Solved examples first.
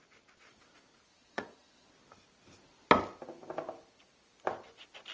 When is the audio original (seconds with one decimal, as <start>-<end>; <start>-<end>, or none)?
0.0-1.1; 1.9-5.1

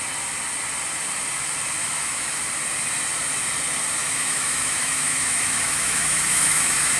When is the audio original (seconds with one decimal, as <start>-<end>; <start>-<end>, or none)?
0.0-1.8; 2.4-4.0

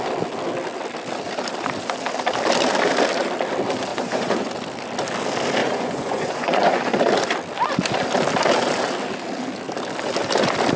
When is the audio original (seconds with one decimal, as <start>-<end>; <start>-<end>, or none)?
0.0-3.9; 4.5-5.6; 6.8-10.8

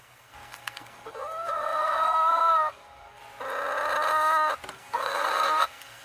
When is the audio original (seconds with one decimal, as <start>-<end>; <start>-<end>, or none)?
3.2-4.7

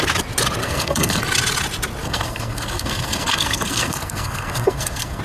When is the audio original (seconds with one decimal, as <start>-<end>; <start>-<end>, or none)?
0.0-0.6; 1.2-2.0